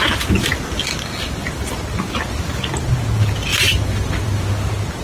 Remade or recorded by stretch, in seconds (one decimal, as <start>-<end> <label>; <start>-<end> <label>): 0.0-0.5 recorded; 0.5-1.8 remade; 1.8-3.5 recorded; 3.5-4.5 remade; 4.5-5.0 recorded